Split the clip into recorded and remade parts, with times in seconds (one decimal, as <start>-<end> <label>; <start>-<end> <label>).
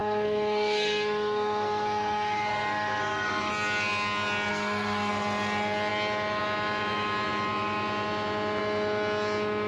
0.0-3.5 remade; 3.5-4.5 recorded; 4.5-5.1 remade; 5.1-9.7 recorded